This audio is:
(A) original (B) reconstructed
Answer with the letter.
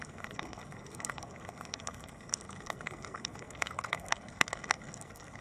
B